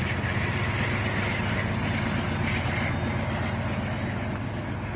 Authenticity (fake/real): real